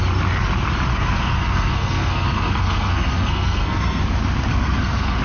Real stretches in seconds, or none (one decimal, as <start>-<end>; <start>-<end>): 0.0-0.9; 4.0-4.5